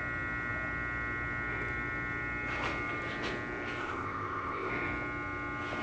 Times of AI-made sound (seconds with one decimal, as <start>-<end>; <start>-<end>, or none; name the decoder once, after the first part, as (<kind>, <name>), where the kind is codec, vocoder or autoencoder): 3.8-4.7 (codec, ZipCodec)